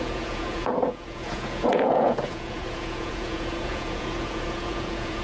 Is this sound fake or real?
fake